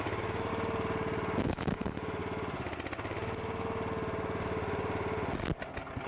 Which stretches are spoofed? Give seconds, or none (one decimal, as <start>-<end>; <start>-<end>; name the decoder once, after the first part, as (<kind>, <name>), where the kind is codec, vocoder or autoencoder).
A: 0.0-0.5 (autoencoder, DAC-VAE); 1.4-2.2